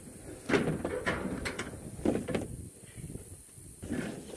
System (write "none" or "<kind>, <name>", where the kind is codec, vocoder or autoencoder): none